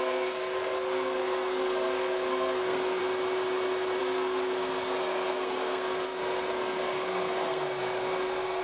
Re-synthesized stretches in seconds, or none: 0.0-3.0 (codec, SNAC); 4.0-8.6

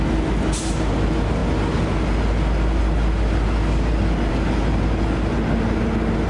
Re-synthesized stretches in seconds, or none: none

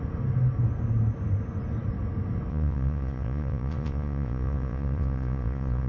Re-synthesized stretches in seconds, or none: 2.5-5.9 (vocoder, Vocos)

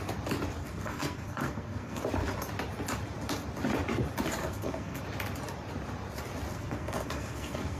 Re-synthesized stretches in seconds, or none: 0.6-2.0 (codec, SNAC); 4.4-5.0; 6.5-7.8

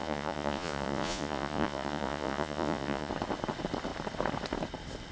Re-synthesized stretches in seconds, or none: 0.0-3.1 (vocoder, Vocos)

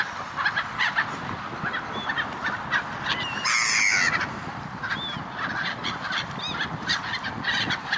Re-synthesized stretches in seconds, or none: none